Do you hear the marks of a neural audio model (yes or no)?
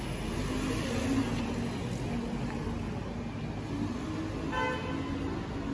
no